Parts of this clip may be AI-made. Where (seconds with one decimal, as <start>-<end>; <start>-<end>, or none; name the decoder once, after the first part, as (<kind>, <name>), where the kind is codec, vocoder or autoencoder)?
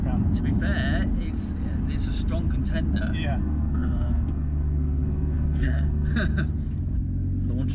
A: 3.4-6.1 (codec, SNAC)